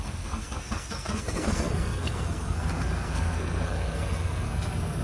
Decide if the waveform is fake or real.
fake